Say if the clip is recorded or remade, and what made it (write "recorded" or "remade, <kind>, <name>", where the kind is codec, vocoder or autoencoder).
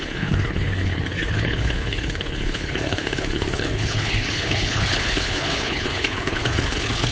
remade, codec, HILCodec